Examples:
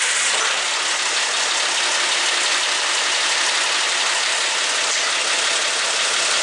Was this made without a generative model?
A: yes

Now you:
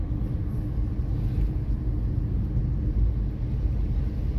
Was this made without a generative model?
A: yes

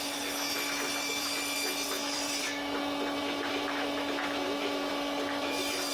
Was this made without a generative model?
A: yes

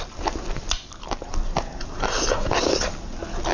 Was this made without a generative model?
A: yes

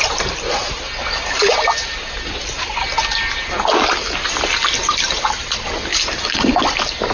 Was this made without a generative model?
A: yes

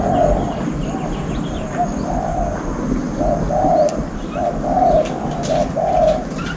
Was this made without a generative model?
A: yes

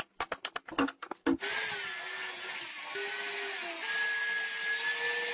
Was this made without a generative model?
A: yes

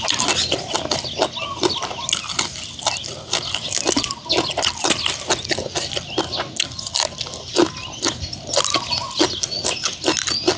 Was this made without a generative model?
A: yes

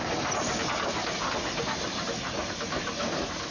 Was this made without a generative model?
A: yes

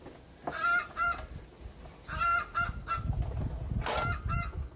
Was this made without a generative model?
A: yes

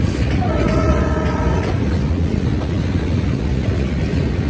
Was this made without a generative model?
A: no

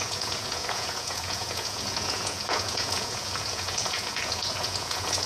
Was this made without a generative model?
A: no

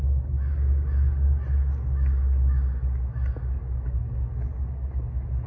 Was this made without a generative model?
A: yes